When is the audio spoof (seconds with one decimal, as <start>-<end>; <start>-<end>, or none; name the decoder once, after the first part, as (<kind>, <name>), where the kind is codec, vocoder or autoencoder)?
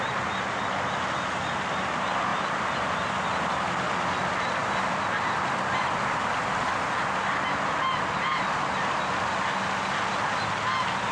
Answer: none